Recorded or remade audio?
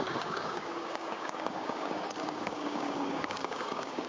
remade